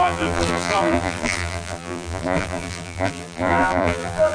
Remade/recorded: remade